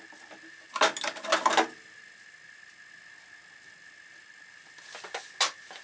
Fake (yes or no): no